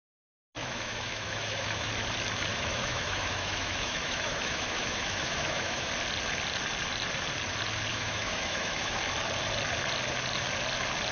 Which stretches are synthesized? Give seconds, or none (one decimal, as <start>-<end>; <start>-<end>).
0.6-1.9; 2.5-5.9; 7.9-9.0

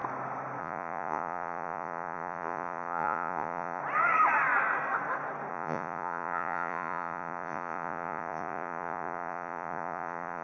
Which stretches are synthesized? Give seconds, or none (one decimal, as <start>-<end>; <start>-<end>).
0.6-3.8; 5.5-10.4

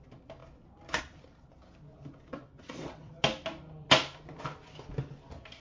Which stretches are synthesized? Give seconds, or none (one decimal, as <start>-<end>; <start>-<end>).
2.3-3.1

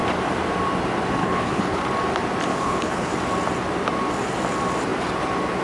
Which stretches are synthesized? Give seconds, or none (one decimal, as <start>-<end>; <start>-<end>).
1.2-1.8; 2.5-3.1

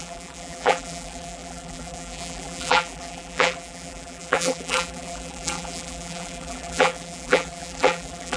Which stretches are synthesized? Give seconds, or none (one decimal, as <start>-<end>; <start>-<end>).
0.0-8.4

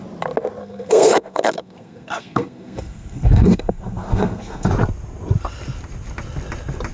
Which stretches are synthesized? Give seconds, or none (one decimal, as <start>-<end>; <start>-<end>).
0.6-4.7

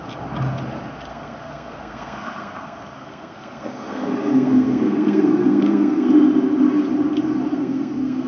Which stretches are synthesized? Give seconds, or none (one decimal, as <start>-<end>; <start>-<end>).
1.1-6.1; 7.5-8.3

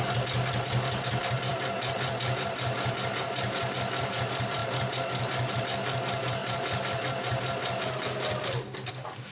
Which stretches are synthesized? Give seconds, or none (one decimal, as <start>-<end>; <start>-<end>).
none